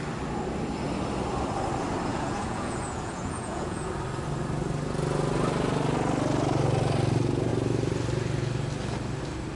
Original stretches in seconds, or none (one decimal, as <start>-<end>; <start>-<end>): 0.0-2.1; 3.9-9.6